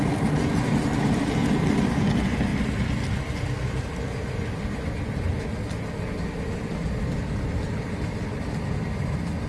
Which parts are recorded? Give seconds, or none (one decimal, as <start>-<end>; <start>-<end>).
0.0-9.5